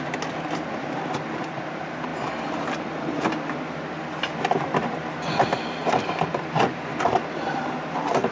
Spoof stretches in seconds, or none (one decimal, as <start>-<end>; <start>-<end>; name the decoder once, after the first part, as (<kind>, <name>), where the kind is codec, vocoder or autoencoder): none